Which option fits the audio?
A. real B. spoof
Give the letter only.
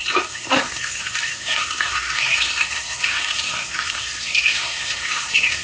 B